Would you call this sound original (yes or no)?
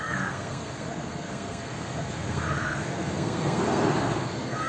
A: no